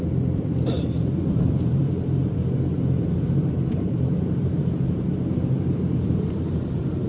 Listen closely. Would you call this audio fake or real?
fake